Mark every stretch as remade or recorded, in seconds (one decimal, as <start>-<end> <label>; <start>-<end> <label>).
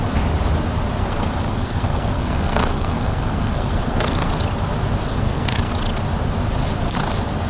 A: 0.0-1.0 recorded; 1.0-4.3 remade; 4.3-5.1 recorded; 5.1-5.7 remade; 5.7-7.5 recorded